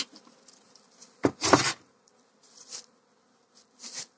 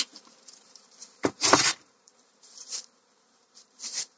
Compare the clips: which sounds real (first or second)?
first